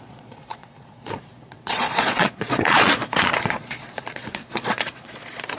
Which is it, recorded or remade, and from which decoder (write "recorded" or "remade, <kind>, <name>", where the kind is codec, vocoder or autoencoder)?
remade, vocoder, Vocos